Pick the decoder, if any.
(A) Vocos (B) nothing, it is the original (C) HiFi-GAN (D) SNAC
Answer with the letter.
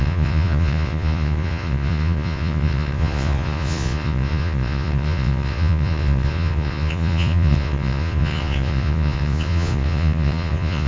A